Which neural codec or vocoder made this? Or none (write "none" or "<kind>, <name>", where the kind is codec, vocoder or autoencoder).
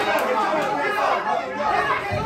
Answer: none